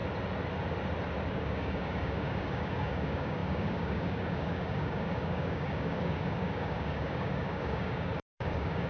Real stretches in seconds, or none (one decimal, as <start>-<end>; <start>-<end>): 0.0-1.3